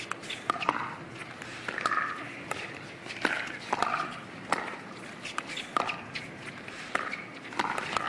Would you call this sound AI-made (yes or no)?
no